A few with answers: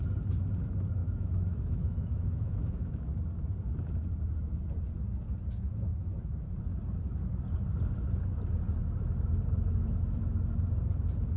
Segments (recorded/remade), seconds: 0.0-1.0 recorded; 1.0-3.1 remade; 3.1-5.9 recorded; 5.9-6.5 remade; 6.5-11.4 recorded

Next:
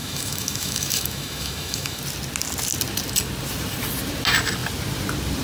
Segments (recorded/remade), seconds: 0.0-2.0 remade; 2.0-5.4 recorded

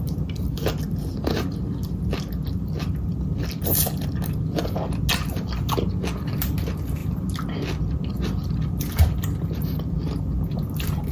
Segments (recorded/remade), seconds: 0.0-11.1 recorded

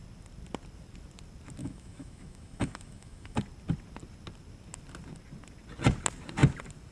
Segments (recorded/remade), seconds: 0.0-1.6 recorded; 1.6-3.4 remade; 3.4-6.9 recorded